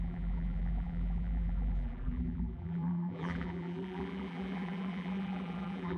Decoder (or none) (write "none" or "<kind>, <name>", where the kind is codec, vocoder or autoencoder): vocoder, BigVGAN v2